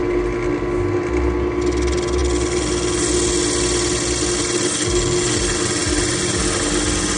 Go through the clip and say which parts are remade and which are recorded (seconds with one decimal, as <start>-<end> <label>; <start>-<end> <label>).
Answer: 0.0-7.2 recorded